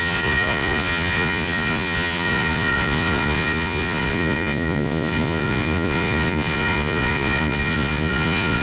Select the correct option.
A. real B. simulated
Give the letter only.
B